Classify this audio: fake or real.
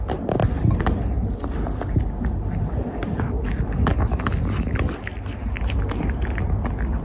real